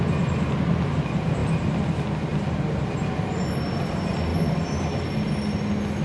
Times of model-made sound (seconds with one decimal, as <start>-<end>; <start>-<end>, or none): none